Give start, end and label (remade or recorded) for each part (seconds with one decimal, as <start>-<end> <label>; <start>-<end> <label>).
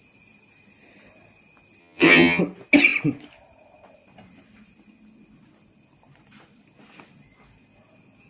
0.0-1.8 recorded; 1.8-2.4 remade; 2.4-8.3 recorded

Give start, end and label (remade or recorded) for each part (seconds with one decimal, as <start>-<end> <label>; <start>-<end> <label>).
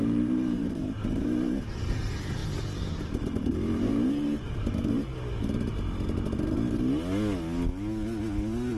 0.0-5.1 remade; 5.1-8.8 recorded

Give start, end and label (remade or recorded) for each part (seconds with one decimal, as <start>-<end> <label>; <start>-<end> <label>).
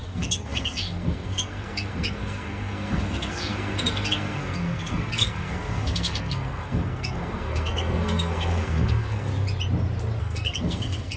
0.0-9.3 remade; 9.3-10.2 recorded; 10.2-11.2 remade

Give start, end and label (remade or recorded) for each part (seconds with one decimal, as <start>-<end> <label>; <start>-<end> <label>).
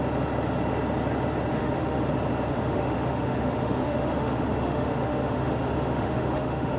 0.0-1.5 recorded; 1.5-2.1 remade; 2.1-2.5 recorded; 2.5-6.8 remade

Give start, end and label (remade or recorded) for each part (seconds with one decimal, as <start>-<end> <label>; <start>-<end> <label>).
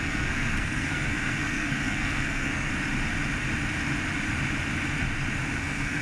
0.0-2.7 remade; 2.7-5.6 recorded; 5.6-6.0 remade